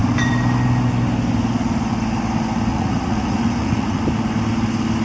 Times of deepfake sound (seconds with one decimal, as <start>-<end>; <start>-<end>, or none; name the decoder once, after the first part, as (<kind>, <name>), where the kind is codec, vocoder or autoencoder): 2.7-4.0 (vocoder, Vocos)